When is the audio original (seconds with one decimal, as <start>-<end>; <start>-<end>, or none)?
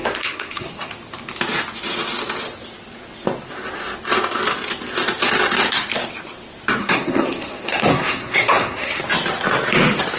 0.9-6.8; 9.0-10.2